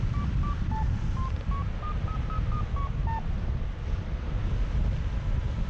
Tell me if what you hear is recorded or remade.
recorded